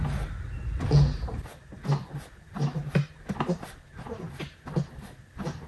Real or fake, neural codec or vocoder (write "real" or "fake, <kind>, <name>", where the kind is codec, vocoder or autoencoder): real